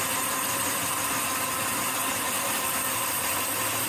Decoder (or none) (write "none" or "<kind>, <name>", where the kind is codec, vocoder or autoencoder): none